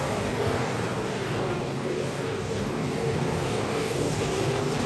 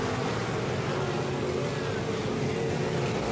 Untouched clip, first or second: second